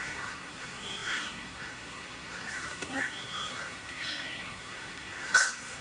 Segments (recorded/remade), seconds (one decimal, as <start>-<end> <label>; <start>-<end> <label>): 0.0-5.8 remade